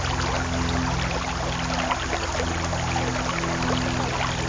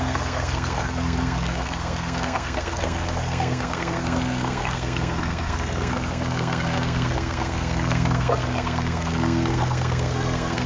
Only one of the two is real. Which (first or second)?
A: first